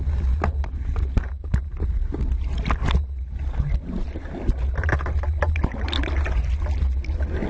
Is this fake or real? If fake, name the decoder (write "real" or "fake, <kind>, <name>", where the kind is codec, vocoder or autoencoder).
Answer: real